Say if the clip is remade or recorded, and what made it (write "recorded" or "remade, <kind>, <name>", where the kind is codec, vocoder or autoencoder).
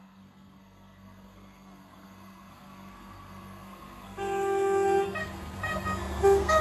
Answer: remade, codec, SNAC